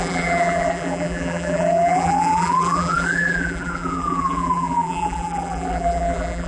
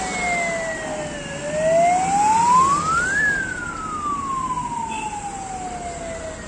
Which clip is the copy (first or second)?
first